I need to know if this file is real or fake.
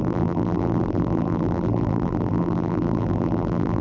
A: fake